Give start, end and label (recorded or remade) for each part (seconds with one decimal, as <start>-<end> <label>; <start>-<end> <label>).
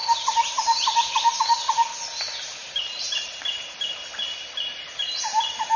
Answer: 0.0-1.4 remade; 1.4-2.6 recorded; 2.6-3.6 remade; 3.6-5.8 recorded